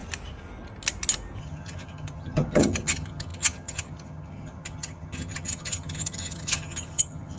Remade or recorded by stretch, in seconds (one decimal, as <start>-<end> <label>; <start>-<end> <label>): 0.0-1.4 recorded; 1.4-7.4 remade